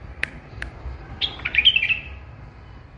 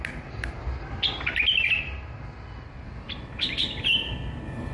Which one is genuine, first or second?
second